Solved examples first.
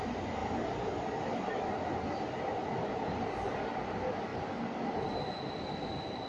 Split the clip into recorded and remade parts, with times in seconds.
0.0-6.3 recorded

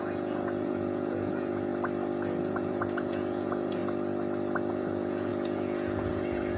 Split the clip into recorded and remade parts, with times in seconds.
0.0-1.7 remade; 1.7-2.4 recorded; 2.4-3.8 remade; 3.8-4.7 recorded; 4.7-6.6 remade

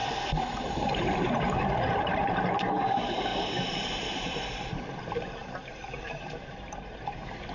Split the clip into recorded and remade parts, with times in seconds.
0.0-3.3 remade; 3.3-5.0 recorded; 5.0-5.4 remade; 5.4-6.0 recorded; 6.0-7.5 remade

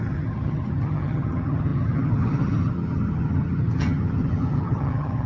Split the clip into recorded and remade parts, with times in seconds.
0.0-5.3 remade